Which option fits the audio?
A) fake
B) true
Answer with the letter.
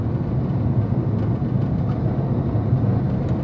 B